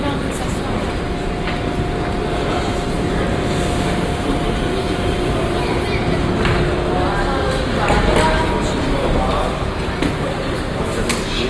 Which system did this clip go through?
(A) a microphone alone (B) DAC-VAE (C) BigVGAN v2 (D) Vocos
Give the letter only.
A